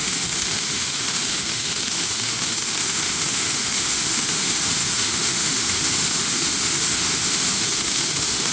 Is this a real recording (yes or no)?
no